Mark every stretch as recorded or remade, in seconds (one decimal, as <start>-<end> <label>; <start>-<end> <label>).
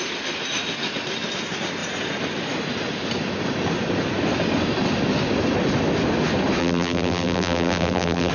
0.0-6.6 recorded; 6.6-8.3 remade